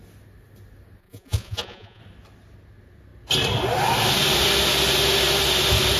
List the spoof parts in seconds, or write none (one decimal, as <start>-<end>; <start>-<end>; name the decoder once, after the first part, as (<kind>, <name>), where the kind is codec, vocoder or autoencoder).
1.0-2.0 (vocoder, Vocos)

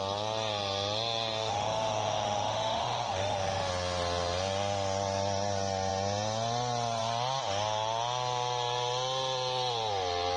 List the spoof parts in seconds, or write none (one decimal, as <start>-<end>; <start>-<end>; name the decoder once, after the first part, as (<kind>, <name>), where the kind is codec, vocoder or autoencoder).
1.4-3.7 (autoencoder, DAC-VAE)

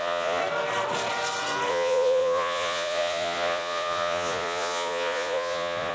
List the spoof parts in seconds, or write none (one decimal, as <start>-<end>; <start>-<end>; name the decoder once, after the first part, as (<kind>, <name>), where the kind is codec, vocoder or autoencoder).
0.0-0.4 (vocoder, Vocos); 1.7-5.9

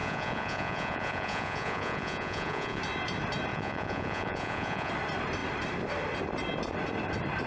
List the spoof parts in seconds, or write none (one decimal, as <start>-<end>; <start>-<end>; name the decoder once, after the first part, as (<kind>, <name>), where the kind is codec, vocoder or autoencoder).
0.0-2.8 (vocoder, Vocos); 3.5-4.9